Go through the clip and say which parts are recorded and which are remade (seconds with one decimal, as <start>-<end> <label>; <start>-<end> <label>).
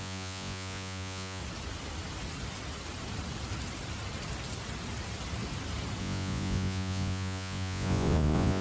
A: 0.0-1.4 remade; 1.4-6.0 recorded; 6.0-8.6 remade